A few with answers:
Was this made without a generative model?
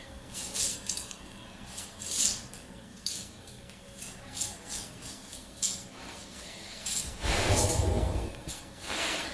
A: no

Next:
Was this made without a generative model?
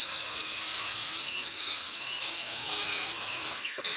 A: no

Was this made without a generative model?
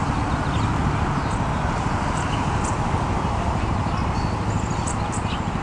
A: yes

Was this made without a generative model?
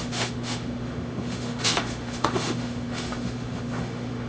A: no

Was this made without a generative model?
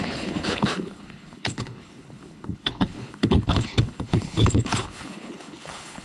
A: no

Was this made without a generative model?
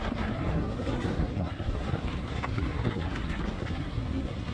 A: no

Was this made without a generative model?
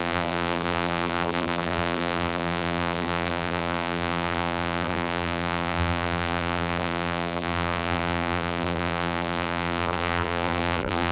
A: no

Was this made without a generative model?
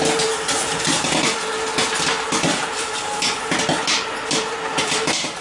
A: no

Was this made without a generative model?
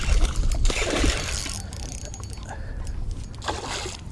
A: yes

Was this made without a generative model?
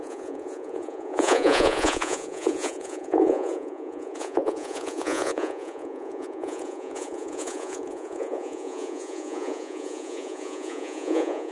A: no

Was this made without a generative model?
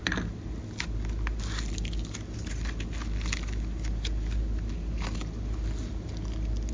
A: yes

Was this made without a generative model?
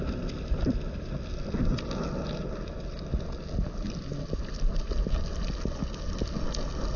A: yes